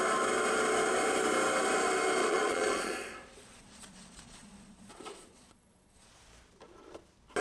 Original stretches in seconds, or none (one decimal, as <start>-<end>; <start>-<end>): 0.0-2.2; 6.1-7.4